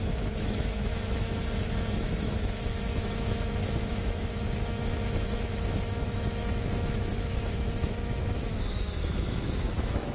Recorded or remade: remade